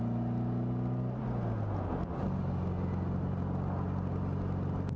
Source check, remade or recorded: recorded